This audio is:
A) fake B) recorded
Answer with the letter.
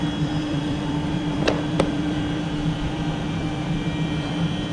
A